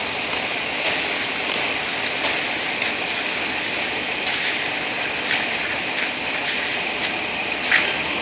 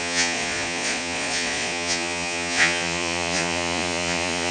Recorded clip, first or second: first